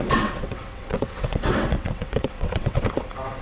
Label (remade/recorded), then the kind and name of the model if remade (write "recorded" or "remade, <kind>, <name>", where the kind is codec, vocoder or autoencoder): remade, vocoder, WaveNeXt